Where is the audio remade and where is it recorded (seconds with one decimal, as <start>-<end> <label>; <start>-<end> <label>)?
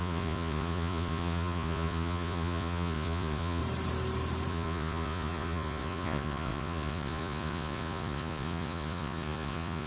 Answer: 0.0-3.6 remade; 3.6-4.5 recorded; 4.5-9.9 remade